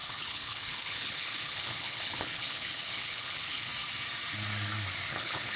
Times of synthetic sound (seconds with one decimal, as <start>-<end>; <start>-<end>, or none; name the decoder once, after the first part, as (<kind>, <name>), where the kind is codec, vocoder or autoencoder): 0.0-3.7 (codec, HILCodec); 5.1-5.6